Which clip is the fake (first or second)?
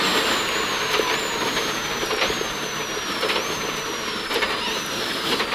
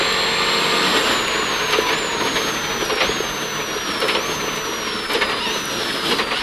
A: first